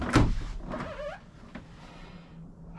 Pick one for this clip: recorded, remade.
recorded